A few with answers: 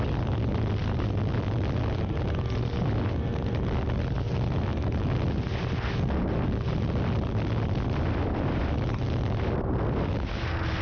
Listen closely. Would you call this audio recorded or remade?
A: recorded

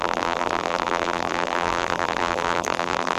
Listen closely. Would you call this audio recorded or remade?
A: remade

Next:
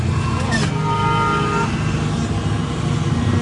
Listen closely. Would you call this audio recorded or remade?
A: recorded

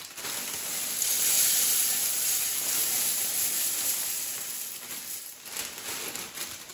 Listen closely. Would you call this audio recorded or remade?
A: recorded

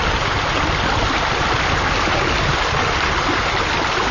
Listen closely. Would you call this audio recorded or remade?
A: recorded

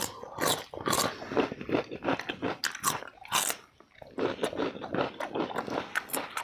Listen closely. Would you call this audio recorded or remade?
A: recorded